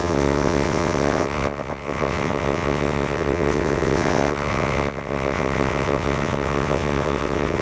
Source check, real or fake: fake